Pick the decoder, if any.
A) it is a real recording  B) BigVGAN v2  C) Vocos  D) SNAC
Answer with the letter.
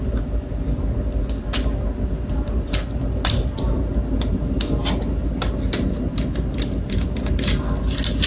A